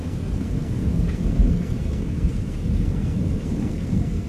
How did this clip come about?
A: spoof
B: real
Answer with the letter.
A